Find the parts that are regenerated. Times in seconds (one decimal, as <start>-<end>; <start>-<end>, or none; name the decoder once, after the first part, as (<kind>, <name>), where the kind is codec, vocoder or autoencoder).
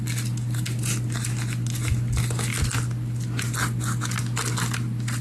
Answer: none